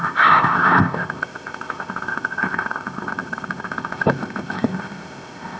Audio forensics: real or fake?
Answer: fake